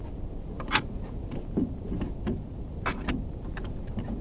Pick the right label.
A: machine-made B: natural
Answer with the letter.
B